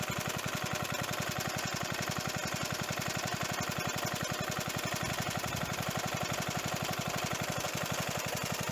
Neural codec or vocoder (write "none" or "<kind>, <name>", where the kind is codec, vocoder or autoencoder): none